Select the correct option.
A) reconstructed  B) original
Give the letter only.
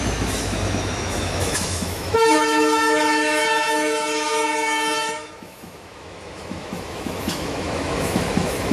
A